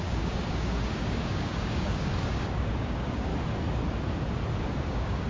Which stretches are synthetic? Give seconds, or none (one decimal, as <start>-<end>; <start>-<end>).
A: 0.0-3.3; 4.8-5.3